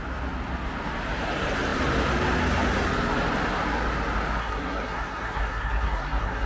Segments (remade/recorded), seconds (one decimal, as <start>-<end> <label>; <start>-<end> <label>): 0.0-4.4 recorded; 4.4-6.5 remade